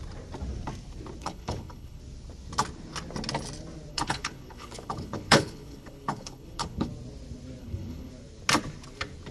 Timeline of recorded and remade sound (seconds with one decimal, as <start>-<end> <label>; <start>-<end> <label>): 0.0-1.2 recorded; 1.2-2.0 remade; 2.0-3.9 recorded; 3.9-6.9 remade; 6.9-7.6 recorded; 7.6-8.1 remade; 8.1-9.3 recorded